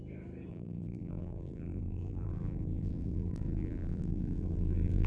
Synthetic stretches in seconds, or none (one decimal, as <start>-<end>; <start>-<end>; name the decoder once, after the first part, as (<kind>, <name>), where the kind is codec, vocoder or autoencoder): 0.5-5.1 (vocoder, BigVGAN v2)